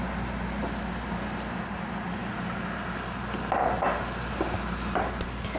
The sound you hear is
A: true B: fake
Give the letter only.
A